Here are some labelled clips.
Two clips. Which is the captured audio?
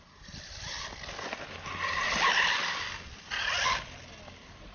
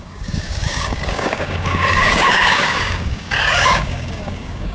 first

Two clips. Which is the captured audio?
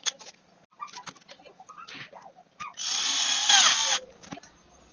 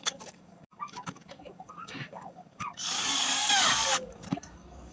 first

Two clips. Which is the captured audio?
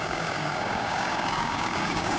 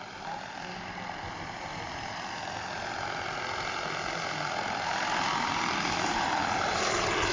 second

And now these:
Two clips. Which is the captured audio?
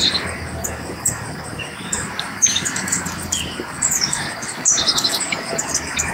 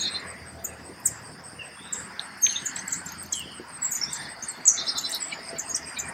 second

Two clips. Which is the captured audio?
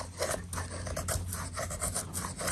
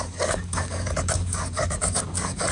first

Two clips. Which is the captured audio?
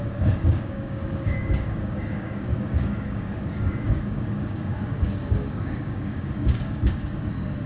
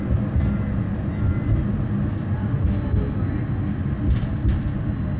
second